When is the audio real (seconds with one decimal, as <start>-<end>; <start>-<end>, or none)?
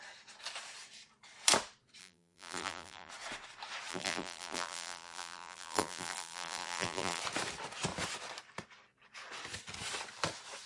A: 0.0-2.0; 3.1-3.9; 7.2-10.7